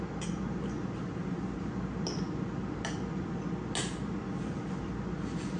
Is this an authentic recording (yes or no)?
yes